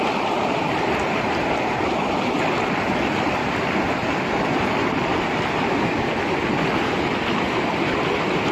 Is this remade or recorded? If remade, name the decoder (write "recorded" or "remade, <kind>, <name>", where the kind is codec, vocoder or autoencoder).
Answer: recorded